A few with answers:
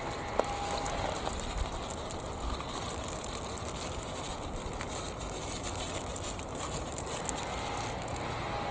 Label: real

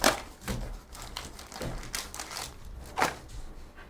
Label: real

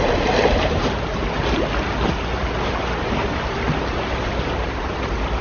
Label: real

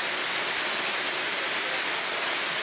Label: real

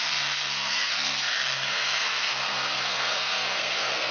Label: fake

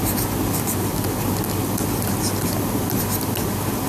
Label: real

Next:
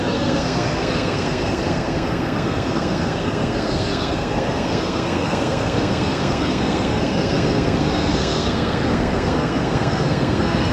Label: fake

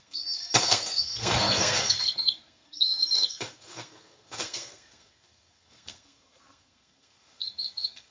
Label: fake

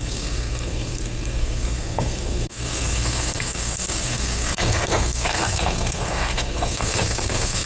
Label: fake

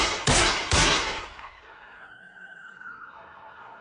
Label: fake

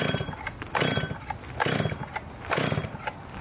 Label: real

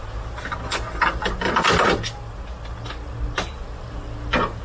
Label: real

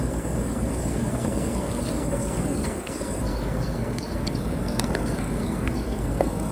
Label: fake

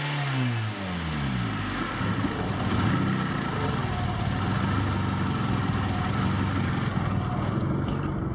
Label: real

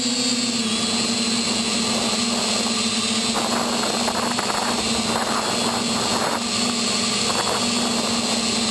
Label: real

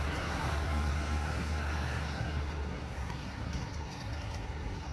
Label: fake